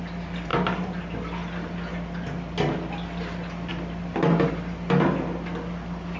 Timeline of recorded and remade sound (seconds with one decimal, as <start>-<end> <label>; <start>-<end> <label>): 0.0-6.2 recorded